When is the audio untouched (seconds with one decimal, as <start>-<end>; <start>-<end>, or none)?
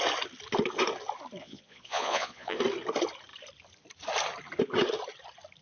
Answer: 0.0-1.4; 2.6-5.6